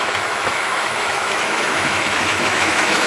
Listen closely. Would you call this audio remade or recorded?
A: remade